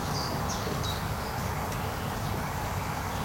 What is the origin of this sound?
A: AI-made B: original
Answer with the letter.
A